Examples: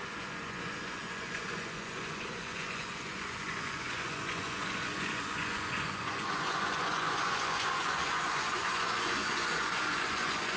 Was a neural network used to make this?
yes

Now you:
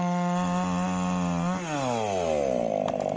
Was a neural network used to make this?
no